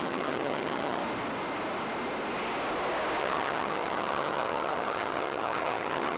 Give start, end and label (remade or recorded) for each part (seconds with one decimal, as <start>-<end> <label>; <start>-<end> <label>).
0.0-1.0 remade; 1.0-3.2 recorded; 3.2-6.2 remade